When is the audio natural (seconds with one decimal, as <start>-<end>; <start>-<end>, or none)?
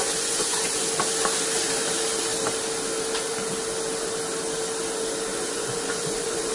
0.8-5.3